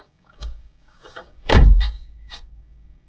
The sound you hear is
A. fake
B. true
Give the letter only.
A